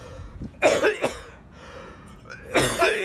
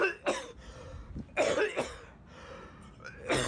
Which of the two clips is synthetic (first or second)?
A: first